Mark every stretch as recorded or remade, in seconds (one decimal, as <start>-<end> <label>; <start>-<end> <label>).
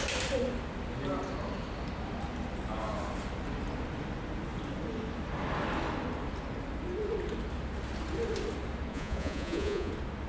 0.0-8.9 recorded; 8.9-9.9 remade; 9.9-10.3 recorded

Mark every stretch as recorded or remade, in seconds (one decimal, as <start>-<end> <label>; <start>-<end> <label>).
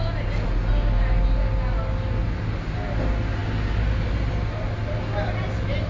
0.0-5.9 recorded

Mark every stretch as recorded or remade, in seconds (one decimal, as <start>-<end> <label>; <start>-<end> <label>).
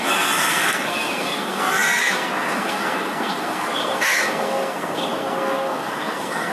0.0-6.5 remade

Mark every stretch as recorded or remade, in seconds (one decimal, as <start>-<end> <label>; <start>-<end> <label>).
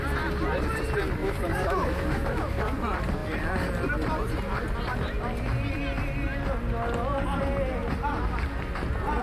0.0-1.2 recorded; 1.2-2.6 remade; 2.6-9.2 recorded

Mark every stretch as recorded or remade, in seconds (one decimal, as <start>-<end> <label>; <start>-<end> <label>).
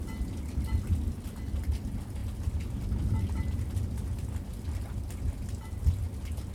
0.0-6.5 recorded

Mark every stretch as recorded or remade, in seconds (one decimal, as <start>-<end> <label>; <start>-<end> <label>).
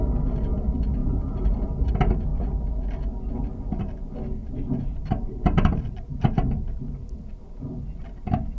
0.0-1.0 recorded; 1.0-1.9 remade; 1.9-4.4 recorded; 4.4-7.8 remade; 7.8-8.6 recorded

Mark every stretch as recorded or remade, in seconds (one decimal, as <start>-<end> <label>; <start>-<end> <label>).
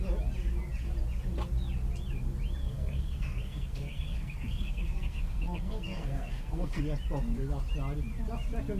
0.0-2.6 recorded; 2.6-6.8 remade; 6.8-8.8 recorded